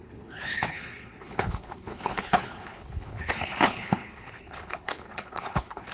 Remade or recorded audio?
remade